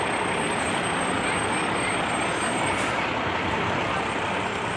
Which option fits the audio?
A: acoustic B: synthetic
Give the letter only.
A